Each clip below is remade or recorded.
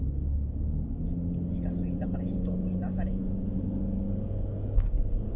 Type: recorded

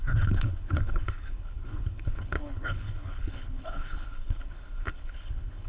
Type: remade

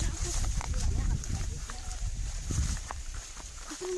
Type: remade